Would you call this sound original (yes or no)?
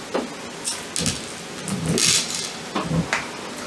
yes